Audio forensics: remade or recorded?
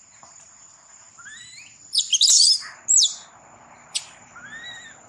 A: recorded